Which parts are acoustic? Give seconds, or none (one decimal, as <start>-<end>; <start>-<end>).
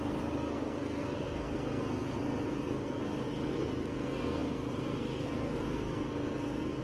none